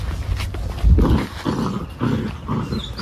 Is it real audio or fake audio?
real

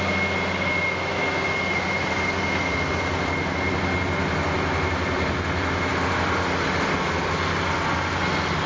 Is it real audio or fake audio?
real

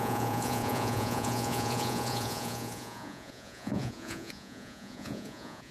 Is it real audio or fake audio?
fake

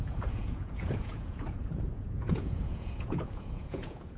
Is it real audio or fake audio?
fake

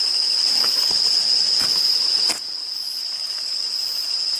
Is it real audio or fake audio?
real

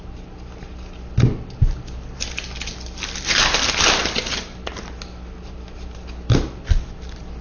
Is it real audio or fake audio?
real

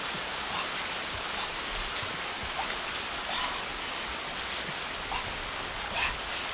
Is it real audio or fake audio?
real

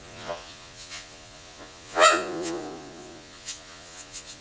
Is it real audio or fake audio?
fake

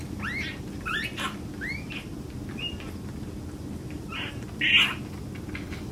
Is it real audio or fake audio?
real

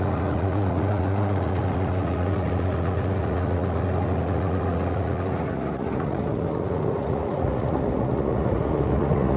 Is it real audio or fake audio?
fake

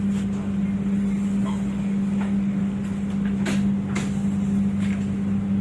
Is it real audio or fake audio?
real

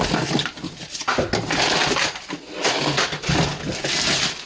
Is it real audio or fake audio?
real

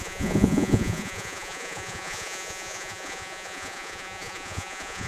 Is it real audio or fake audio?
fake